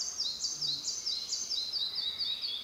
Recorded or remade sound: recorded